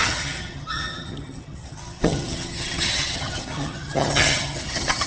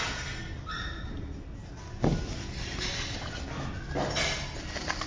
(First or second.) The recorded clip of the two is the second